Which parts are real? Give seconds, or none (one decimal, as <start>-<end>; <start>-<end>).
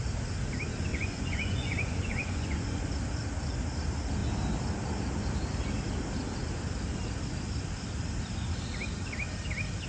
0.0-0.9; 2.9-9.9